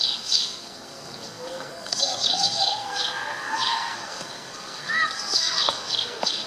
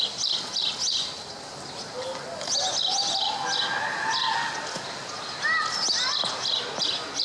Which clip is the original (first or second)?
second